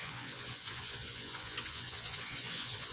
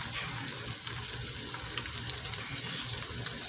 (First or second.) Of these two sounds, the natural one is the second